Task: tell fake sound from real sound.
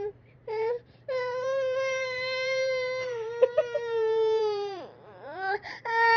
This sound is fake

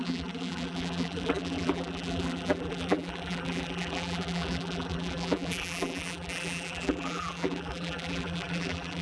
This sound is fake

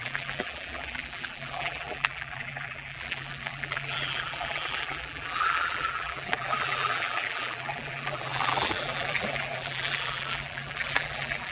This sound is fake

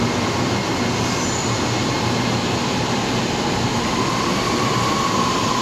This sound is real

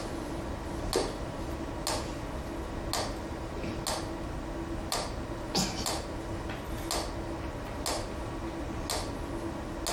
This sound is real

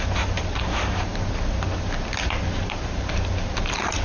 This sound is real